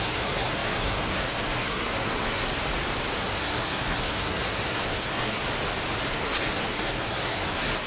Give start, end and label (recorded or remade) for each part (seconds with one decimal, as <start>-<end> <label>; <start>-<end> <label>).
0.0-2.5 remade; 2.5-3.2 recorded; 3.2-5.4 remade; 5.4-6.1 recorded; 6.1-7.9 remade